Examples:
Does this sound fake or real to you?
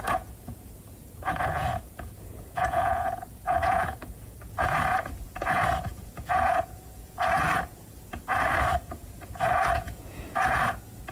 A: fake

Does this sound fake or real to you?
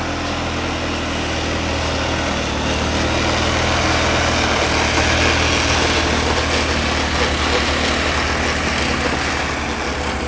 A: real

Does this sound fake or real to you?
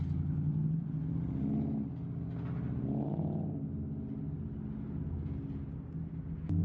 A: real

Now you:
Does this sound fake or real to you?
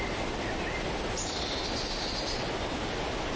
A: real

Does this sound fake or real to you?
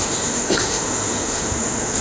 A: fake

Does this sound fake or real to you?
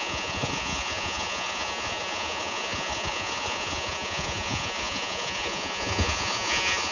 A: fake